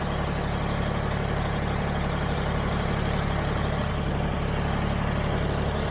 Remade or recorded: recorded